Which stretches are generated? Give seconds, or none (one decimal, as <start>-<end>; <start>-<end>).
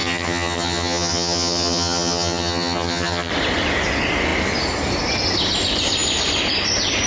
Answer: 0.0-3.3